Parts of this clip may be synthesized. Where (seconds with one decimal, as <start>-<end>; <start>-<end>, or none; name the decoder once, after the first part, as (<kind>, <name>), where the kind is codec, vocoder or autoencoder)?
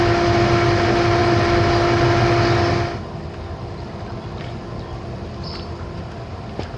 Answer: none